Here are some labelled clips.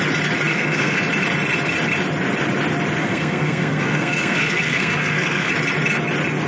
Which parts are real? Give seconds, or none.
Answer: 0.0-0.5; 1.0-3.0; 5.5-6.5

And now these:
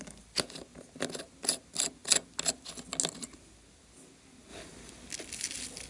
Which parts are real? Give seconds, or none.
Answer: 0.0-5.9